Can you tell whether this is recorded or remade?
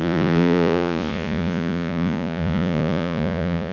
remade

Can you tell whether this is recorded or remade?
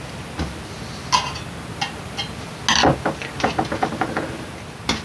recorded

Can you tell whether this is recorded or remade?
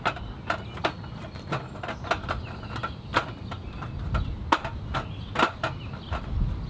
recorded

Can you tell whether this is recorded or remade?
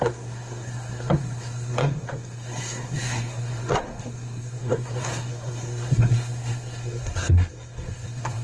remade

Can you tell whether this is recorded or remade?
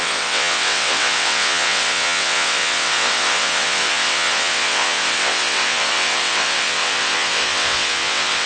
remade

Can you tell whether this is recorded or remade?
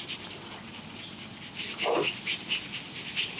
recorded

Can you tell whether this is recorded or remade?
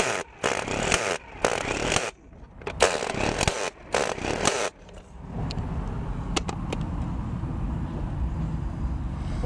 recorded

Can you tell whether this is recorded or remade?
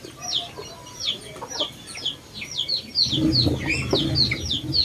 recorded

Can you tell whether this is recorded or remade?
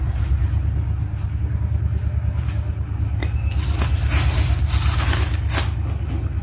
recorded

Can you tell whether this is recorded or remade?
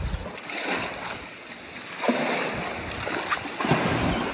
recorded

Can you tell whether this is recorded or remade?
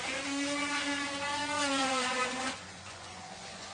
remade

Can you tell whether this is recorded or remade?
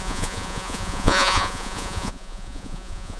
remade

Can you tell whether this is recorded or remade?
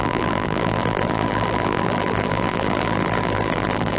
remade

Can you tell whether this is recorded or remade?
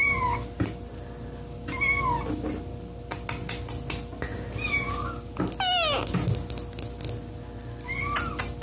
recorded